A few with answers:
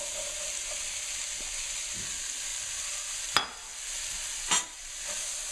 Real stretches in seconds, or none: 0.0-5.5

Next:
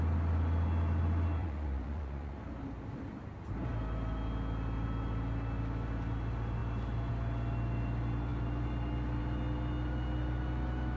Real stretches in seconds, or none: 0.0-1.4; 2.4-11.0

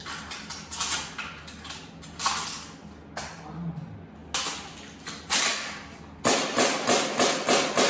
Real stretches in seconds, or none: 0.0-7.9

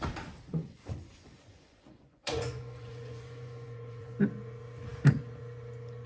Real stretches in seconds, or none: 0.0-0.5; 4.2-6.1